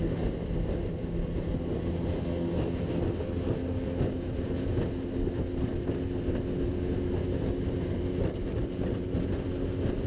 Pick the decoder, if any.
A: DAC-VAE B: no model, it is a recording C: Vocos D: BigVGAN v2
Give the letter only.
B